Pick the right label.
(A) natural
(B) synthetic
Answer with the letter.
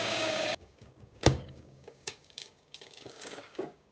B